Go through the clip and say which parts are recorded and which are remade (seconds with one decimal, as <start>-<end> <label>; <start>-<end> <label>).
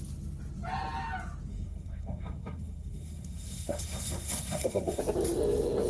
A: 0.0-1.5 recorded; 1.5-5.0 remade; 5.0-5.9 recorded